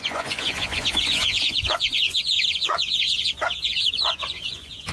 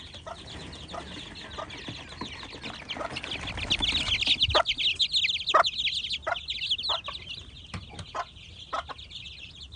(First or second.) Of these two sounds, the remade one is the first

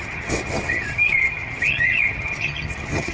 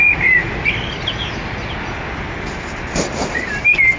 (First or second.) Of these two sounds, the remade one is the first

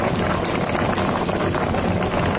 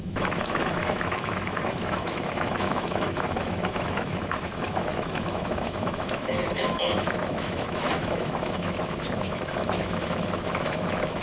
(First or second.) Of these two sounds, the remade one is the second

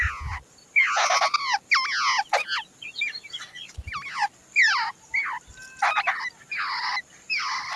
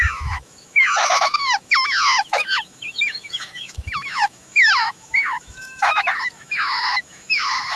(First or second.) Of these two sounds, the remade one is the second